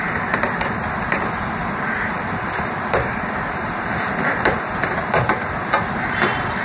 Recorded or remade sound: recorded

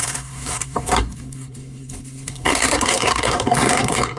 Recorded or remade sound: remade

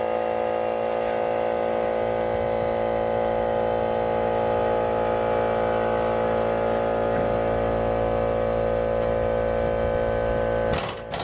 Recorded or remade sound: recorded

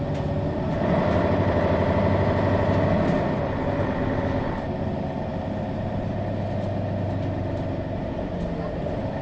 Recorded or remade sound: recorded